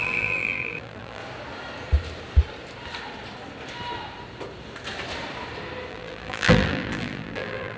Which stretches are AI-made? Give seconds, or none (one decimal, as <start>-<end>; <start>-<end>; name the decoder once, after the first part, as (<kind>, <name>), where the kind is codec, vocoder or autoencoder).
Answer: 0.0-1.2 (vocoder, BigVGAN v2); 5.9-7.8